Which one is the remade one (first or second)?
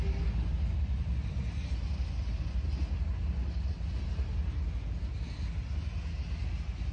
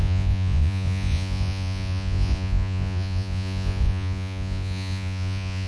second